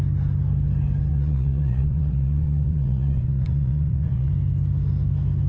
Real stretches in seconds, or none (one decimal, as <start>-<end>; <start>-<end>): 0.0-1.1; 4.3-5.5